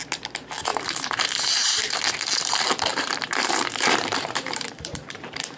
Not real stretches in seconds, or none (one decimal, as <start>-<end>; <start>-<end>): 0.7-2.0; 2.9-5.6